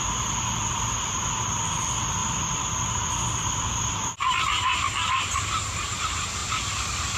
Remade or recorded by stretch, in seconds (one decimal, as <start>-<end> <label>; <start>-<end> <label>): 0.0-7.2 recorded